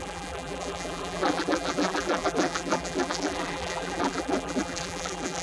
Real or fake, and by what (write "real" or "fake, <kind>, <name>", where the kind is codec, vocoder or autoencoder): fake, vocoder, BigVGAN v2